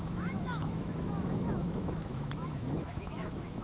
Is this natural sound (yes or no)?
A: no